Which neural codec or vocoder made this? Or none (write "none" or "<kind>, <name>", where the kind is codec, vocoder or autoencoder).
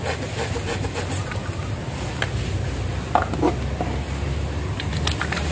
none